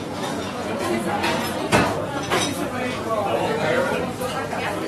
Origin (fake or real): fake